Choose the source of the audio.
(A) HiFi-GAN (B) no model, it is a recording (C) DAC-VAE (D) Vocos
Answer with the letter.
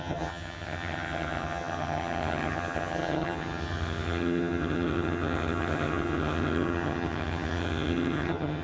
A